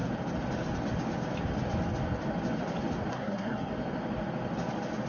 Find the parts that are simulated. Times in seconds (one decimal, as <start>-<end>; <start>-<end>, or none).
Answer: 3.1-3.7

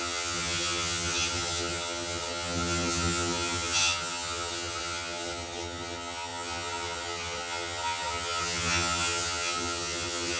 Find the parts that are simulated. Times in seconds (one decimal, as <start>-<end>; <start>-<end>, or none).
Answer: 0.0-10.4

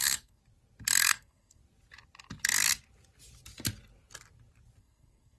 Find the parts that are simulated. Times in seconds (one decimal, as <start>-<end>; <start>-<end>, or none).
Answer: 0.0-0.4; 1.0-1.6; 4.8-5.4

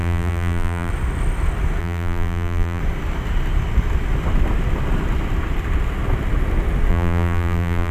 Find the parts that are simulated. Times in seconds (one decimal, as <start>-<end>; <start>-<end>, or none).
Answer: 0.0-0.9; 1.8-2.8; 6.9-7.9

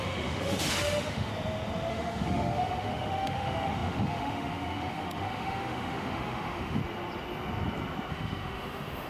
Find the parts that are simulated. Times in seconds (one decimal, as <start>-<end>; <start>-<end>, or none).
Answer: 0.0-1.3; 1.9-6.8; 8.1-9.1

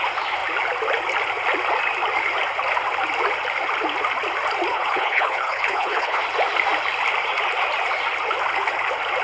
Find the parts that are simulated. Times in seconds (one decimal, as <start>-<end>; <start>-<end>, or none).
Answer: 4.7-6.2

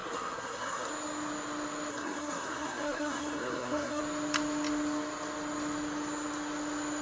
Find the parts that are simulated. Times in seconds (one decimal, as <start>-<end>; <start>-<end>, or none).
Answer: 0.0-0.9; 1.9-4.0

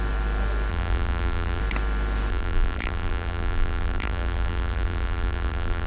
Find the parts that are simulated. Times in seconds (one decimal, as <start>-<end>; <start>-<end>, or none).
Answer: 0.7-1.6; 2.3-5.9